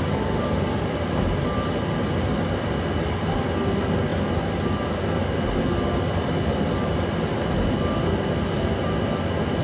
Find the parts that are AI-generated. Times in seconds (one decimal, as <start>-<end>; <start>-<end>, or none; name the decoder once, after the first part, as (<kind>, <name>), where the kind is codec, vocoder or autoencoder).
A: none

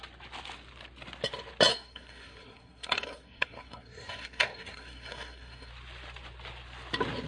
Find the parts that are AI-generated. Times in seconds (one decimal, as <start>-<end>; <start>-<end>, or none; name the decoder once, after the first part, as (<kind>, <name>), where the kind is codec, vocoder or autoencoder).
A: 1.7-5.7 (codec, SNAC)

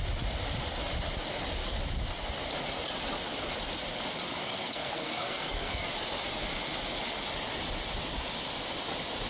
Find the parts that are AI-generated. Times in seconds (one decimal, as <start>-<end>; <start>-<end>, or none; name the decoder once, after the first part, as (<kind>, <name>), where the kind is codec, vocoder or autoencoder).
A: 4.4-5.7 (codec, SNAC)

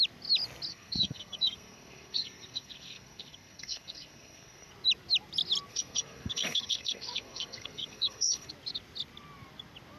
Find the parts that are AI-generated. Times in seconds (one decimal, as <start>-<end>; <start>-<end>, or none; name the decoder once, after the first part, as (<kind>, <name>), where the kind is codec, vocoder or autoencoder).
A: 0.7-4.7 (codec, SNAC); 5.7-8.5

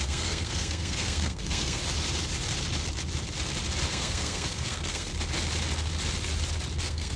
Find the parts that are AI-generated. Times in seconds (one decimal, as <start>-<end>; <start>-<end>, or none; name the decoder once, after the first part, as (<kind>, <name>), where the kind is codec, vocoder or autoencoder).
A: 0.0-1.8 (codec, SNAC); 3.9-5.1; 6.8-7.2

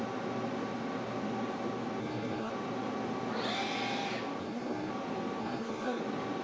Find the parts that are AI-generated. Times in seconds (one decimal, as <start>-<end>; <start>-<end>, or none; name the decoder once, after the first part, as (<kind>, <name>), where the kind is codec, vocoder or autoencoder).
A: 2.0-2.5 (codec, SNAC); 4.4-4.9; 5.4-6.0